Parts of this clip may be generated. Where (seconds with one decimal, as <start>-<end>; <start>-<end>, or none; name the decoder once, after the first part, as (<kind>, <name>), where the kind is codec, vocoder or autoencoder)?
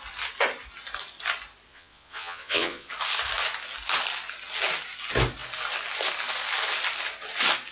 1.7-2.9 (vocoder, Vocos)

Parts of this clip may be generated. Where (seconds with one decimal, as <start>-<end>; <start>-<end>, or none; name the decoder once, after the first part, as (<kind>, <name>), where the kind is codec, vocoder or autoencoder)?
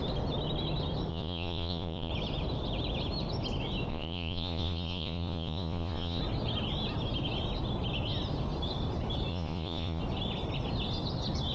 1.1-2.1 (vocoder, Vocos); 3.9-6.2; 9.3-10.0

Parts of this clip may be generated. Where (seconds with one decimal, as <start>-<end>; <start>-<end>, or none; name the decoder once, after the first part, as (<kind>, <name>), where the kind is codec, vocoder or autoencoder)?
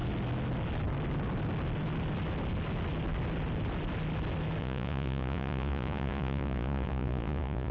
4.6-7.7 (vocoder, Vocos)